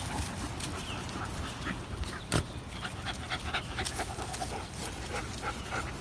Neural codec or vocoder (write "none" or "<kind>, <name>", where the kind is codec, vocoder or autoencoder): none